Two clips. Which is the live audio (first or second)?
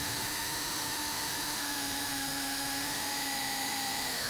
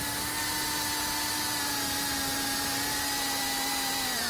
second